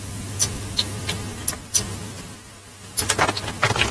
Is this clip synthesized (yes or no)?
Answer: no